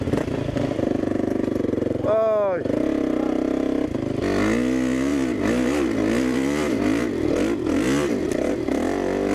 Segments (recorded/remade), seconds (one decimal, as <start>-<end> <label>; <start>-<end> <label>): 0.0-9.3 recorded